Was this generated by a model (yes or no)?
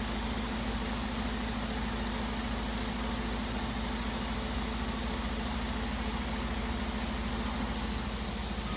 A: no